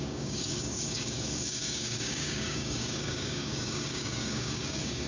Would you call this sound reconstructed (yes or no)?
yes